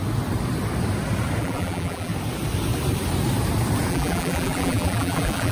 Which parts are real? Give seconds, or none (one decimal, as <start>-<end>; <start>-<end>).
0.0-1.4; 2.1-3.9

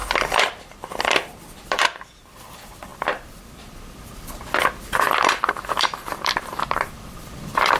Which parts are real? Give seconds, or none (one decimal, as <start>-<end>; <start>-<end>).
0.0-1.3

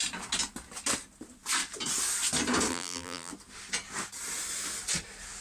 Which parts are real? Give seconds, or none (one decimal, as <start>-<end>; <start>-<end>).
0.0-2.7; 3.3-5.4